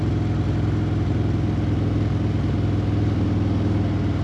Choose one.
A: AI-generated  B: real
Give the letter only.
B